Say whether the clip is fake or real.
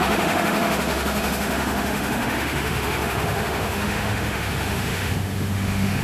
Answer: fake